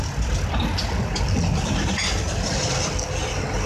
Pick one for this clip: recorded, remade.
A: recorded